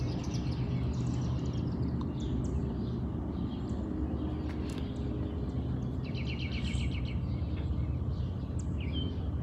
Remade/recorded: recorded